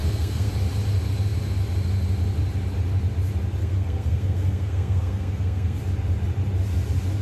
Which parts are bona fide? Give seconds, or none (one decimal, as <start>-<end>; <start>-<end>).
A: 0.5-3.6; 5.8-7.2